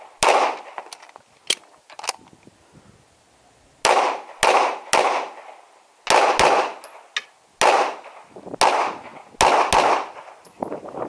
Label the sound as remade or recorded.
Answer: recorded